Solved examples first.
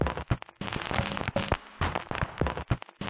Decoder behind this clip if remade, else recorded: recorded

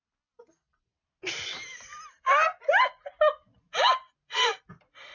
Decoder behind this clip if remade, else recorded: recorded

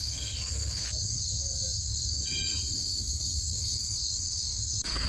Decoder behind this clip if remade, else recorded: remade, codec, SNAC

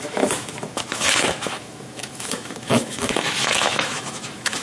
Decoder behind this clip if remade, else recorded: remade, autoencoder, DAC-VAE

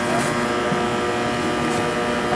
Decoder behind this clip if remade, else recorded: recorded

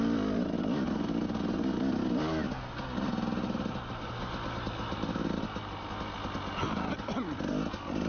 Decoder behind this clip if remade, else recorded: recorded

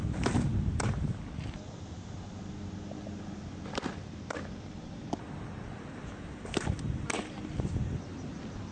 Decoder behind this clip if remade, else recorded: recorded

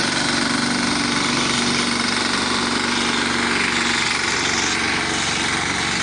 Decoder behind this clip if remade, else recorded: recorded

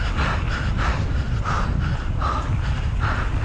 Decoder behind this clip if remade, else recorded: recorded